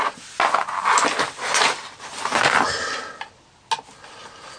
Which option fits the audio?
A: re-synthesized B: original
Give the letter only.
B